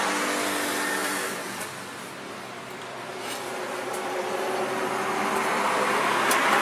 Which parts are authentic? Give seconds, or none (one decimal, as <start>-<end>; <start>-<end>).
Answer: 0.0-1.0; 4.5-6.6